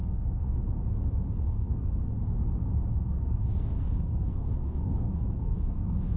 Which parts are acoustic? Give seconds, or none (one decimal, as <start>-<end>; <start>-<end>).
0.6-1.5; 2.2-2.9

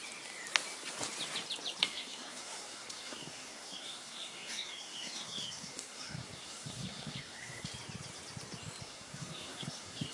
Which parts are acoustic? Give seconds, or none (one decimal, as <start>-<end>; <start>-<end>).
0.0-1.8; 7.7-8.8

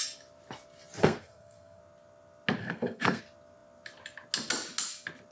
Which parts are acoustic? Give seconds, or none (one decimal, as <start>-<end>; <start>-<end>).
0.0-1.0; 1.8-2.6; 3.2-5.3

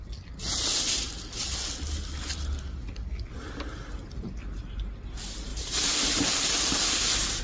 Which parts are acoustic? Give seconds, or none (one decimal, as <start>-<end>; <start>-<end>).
0.0-5.5

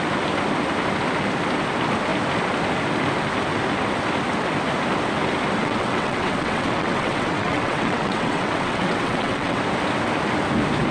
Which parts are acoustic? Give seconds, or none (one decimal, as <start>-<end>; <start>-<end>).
0.0-5.6; 9.6-10.9

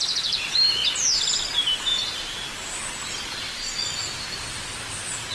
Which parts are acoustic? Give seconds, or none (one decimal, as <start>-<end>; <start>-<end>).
0.0-5.3

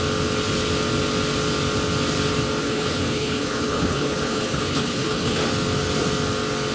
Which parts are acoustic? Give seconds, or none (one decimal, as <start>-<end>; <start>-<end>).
0.0-2.6; 5.4-6.7

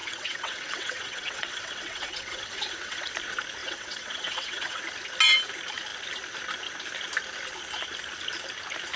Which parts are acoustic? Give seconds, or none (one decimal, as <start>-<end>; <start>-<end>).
3.1-3.6; 4.8-9.0